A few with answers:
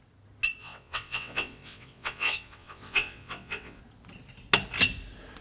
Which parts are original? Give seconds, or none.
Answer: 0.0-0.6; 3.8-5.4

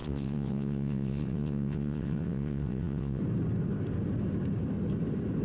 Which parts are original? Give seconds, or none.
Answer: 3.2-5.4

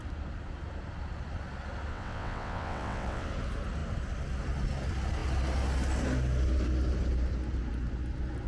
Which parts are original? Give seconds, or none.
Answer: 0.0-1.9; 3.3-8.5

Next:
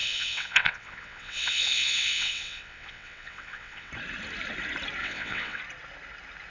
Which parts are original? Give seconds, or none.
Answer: 3.9-5.0; 5.6-6.5

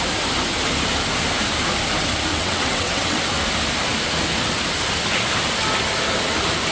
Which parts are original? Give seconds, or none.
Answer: 0.0-2.3; 3.2-6.7